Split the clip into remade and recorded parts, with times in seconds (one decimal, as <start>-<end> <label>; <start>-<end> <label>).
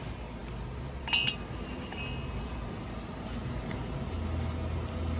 0.0-5.2 recorded